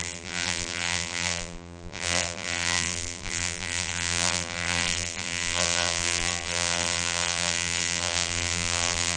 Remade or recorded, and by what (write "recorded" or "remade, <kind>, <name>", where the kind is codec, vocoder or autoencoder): remade, vocoder, BigVGAN v2